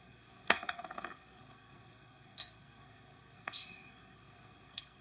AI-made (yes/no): yes